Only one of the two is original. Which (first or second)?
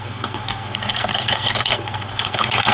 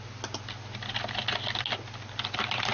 second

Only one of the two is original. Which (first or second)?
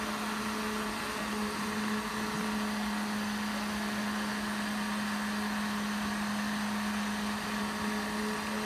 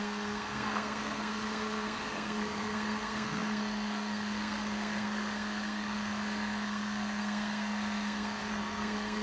first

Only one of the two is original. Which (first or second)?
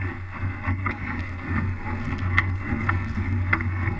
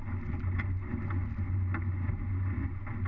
second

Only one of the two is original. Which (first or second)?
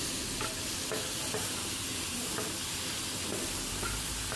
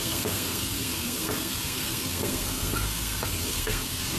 first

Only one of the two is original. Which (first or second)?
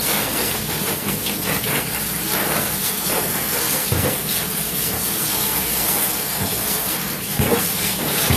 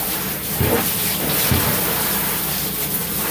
second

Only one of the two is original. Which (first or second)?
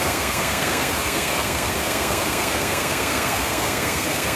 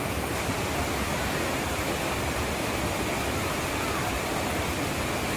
second